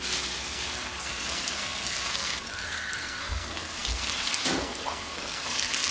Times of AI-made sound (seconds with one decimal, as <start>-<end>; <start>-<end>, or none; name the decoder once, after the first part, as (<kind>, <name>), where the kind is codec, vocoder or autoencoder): 0.0-5.9 (codec, SNAC)